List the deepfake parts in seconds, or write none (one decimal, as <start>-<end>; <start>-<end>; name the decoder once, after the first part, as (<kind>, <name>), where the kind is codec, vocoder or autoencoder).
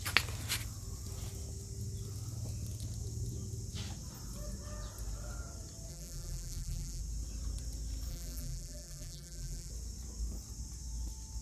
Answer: 5.9-7.0 (vocoder, BigVGAN v2); 8.1-9.7